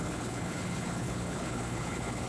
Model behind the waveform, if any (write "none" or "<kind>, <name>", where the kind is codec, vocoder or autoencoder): codec, HILCodec